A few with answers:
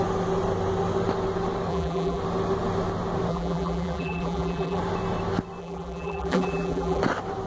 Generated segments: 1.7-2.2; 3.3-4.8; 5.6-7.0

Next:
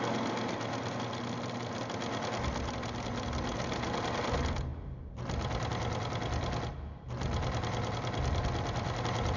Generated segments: none